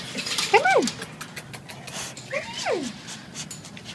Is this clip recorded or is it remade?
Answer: recorded